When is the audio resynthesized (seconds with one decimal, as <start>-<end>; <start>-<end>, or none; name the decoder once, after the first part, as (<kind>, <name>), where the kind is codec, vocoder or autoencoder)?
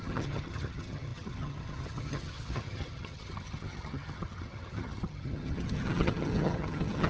0.0-7.1 (vocoder, HiFi-GAN)